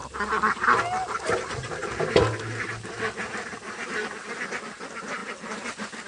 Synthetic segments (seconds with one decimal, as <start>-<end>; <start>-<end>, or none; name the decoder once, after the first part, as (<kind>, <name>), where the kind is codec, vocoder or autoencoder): none